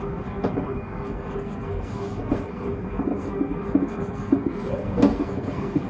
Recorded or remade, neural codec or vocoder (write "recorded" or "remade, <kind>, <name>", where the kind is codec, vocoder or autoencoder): remade, codec, SNAC